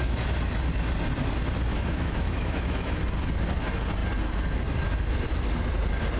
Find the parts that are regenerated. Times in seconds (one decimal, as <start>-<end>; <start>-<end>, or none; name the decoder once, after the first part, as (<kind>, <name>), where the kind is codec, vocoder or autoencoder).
1.7-3.0 (autoencoder, DAC-VAE)